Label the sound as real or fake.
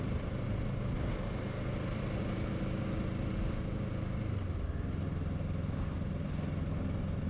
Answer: real